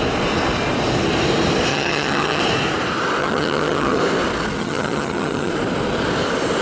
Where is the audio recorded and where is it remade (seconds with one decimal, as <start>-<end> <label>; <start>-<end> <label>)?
0.0-1.7 recorded; 1.7-2.4 remade; 2.4-3.2 recorded; 3.2-4.0 remade; 4.0-4.6 recorded; 4.6-5.5 remade; 5.5-6.6 recorded